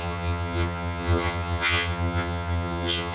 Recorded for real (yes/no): no